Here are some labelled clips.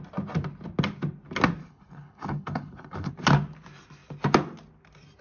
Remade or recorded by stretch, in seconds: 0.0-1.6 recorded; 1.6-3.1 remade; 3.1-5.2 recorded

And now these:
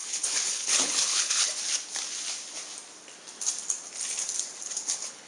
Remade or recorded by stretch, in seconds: 0.0-1.5 remade; 1.5-4.7 recorded; 4.7-5.3 remade

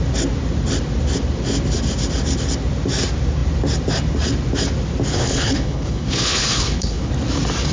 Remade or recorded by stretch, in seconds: 0.0-5.1 recorded; 5.1-7.1 remade; 7.1-7.7 recorded

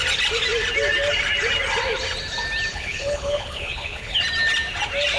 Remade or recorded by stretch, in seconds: 0.0-2.7 recorded; 2.7-4.2 remade; 4.2-5.2 recorded

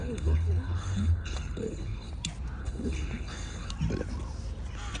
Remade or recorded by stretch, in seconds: 0.0-2.1 remade; 2.1-2.6 recorded; 2.6-3.7 remade; 3.7-5.0 recorded

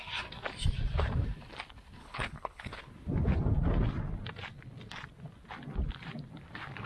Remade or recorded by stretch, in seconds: 0.0-2.0 recorded; 2.0-2.8 remade; 2.8-6.9 recorded

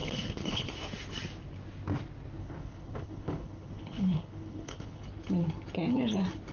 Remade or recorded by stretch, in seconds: 0.0-0.7 remade; 0.7-2.4 recorded; 2.4-5.0 remade; 5.0-6.5 recorded